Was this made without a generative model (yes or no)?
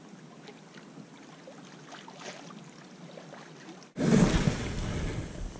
yes